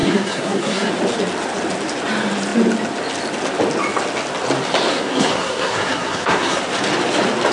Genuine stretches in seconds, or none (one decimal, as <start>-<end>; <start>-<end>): 0.9-4.9; 6.6-7.5